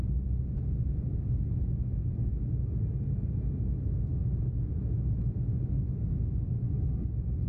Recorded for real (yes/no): yes